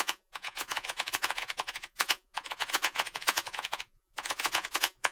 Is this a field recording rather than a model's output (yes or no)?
no